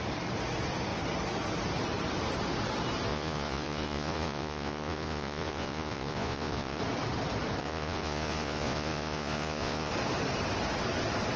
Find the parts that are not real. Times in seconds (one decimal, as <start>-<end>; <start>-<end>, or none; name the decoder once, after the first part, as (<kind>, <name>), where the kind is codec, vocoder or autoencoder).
3.1-6.8 (vocoder, Vocos); 7.6-9.9